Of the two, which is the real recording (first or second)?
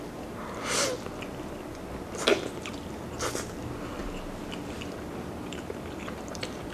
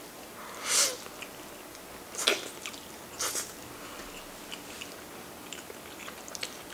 second